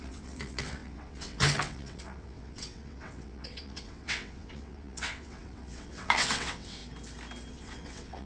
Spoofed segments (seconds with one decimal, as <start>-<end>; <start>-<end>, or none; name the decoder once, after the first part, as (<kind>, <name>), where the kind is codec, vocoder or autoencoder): 0.0-6.8 (vocoder, WaveNeXt); 7.5-8.3